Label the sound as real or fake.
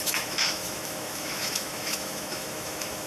fake